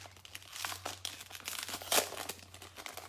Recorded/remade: recorded